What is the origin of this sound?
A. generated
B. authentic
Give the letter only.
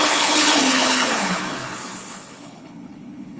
A